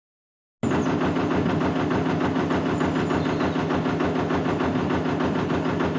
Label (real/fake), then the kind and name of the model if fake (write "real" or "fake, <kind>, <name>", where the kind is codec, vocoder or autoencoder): real